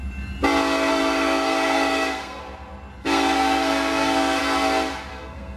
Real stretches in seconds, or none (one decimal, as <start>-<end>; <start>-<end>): 0.0-0.9; 2.4-3.0; 4.4-5.1